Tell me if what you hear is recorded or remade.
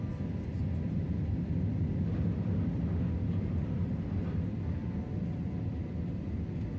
recorded